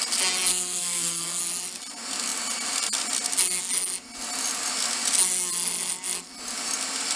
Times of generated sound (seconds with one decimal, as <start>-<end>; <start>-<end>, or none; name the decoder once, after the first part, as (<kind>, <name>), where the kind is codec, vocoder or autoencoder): 0.5-1.4 (codec, SNAC)